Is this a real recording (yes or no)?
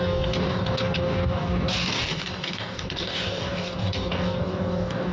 no